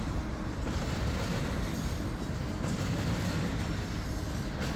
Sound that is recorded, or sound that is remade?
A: recorded